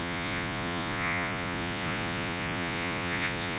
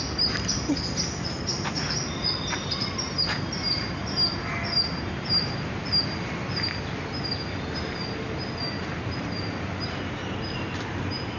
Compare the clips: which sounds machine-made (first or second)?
first